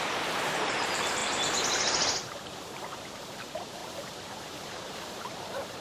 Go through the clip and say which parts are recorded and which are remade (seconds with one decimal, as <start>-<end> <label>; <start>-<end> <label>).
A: 0.0-1.2 remade; 1.2-2.2 recorded; 2.2-5.8 remade